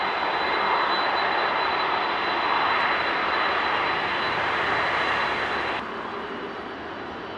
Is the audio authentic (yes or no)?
yes